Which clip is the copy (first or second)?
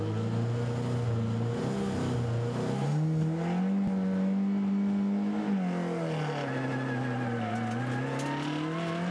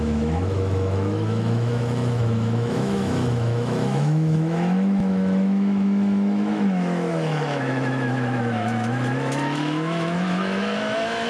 second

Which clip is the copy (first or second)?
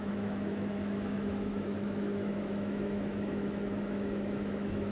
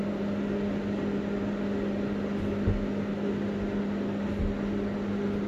first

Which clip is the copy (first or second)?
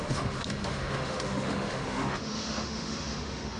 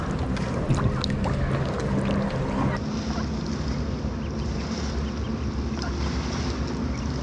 first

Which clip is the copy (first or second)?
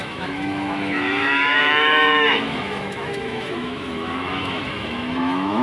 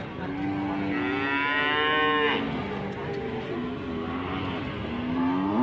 first